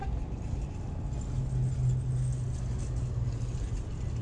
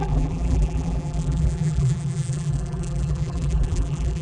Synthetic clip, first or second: second